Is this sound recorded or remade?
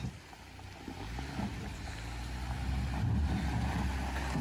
recorded